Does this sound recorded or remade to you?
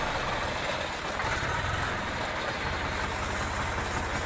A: recorded